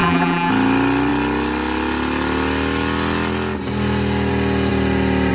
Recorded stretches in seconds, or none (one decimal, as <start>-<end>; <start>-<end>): 0.5-5.3